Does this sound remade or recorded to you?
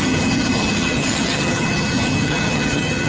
remade